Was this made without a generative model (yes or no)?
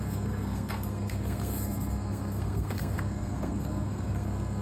no